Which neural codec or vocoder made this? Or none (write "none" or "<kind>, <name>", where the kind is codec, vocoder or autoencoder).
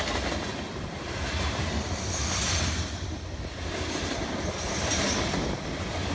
none